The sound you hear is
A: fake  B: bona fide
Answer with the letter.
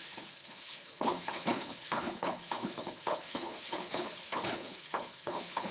A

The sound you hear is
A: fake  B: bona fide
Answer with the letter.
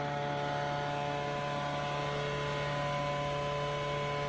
B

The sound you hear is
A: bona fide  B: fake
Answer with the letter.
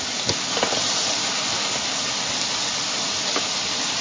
A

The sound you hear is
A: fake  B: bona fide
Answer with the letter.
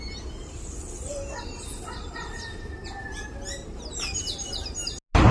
B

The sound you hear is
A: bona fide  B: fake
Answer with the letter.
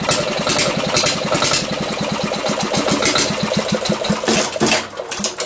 A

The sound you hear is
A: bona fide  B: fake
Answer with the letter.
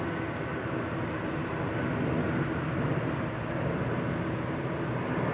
A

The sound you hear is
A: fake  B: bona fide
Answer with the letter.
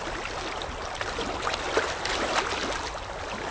B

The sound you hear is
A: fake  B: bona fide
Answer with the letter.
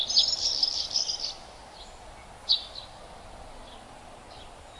B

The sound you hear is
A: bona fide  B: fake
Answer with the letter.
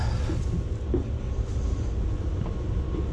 A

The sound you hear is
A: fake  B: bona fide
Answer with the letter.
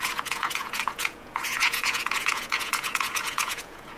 A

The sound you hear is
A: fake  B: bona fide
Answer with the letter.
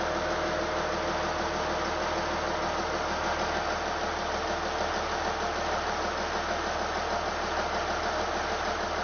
B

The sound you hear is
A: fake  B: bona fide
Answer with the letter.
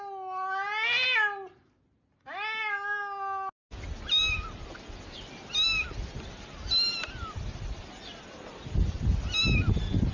B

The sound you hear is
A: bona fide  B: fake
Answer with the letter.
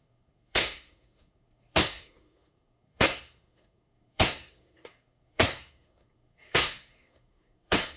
B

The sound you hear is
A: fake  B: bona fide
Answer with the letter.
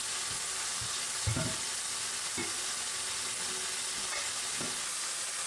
B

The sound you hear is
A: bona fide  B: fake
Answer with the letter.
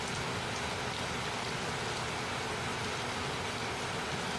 A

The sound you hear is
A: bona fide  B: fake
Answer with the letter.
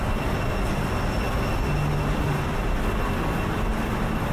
A